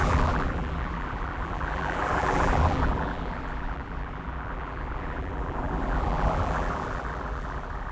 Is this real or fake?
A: fake